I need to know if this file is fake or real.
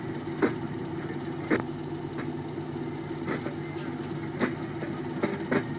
real